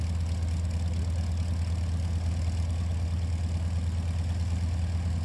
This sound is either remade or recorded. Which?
recorded